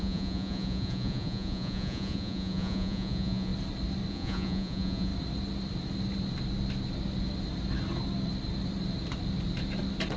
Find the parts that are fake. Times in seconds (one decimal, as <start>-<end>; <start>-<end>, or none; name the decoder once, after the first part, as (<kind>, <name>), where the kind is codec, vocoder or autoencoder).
0.0-3.5 (vocoder, Vocos); 4.1-5.1